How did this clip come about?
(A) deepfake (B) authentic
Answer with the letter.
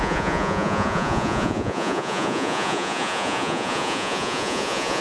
A